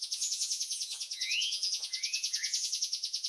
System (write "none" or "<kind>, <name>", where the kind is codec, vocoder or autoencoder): vocoder, Vocos